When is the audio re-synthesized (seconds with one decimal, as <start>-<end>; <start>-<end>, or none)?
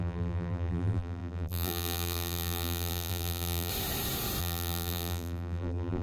0.0-3.7; 4.4-6.0